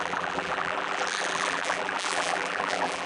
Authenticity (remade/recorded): remade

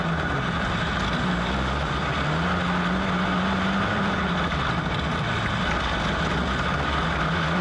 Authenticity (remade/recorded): recorded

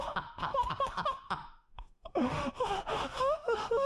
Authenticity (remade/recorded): remade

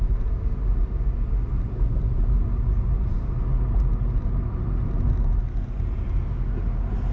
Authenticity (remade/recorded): recorded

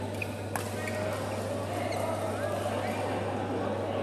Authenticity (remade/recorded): recorded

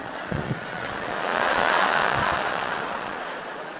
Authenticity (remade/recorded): remade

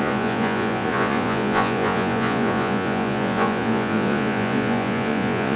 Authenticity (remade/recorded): remade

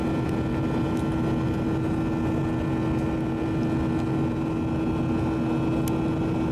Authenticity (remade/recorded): recorded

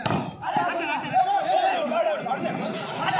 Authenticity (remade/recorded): recorded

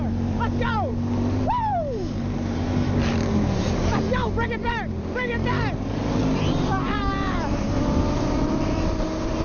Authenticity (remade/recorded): remade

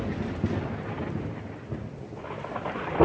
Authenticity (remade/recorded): recorded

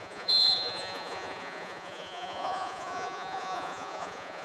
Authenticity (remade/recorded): remade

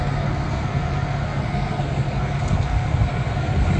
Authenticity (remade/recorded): remade